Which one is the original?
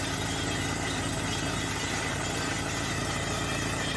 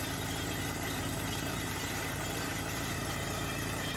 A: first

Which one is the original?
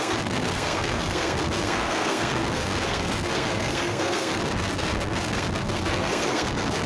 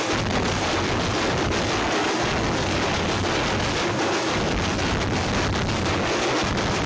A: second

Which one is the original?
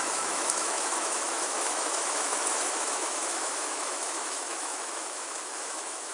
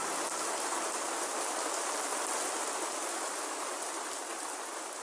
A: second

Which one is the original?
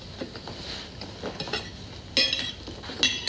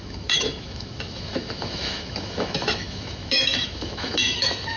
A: first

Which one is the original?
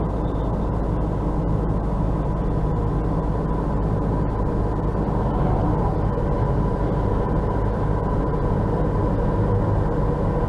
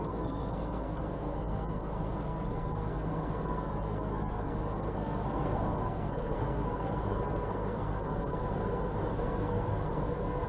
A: first